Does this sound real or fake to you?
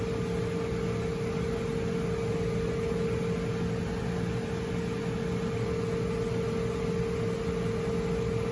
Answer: real